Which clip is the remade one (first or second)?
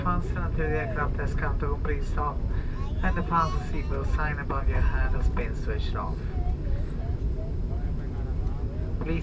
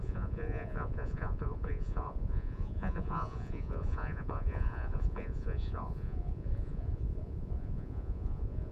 second